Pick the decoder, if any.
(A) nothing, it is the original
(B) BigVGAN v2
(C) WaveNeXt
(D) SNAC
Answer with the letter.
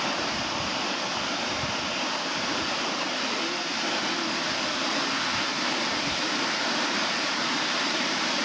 B